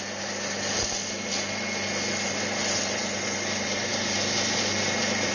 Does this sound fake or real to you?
real